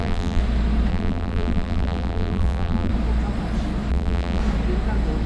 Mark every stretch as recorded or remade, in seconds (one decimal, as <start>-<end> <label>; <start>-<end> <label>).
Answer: 0.0-0.4 remade; 0.4-0.9 recorded; 0.9-2.9 remade; 2.9-3.9 recorded; 3.9-4.4 remade; 4.4-5.3 recorded